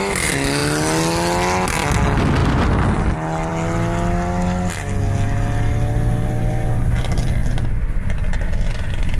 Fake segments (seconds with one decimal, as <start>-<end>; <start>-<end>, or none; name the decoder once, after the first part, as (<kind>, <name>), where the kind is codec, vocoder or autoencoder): none